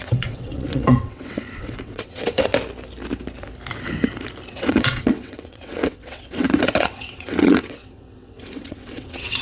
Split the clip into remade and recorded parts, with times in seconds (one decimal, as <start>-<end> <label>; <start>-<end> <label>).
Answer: 0.0-2.5 remade; 2.5-4.5 recorded; 4.5-9.4 remade